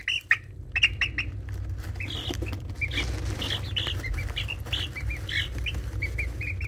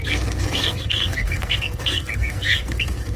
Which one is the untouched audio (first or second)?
first